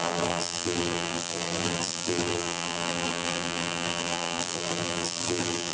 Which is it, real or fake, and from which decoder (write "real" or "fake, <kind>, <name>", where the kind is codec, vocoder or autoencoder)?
fake, vocoder, BigVGAN v2